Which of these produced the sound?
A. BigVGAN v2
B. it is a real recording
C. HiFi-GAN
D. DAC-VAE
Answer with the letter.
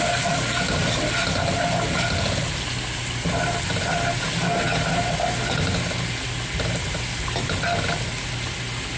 B